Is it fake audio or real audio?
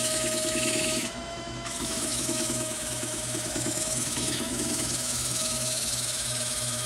fake